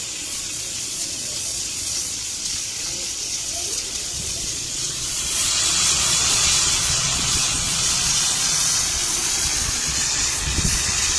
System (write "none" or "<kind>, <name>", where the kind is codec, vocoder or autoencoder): vocoder, Vocos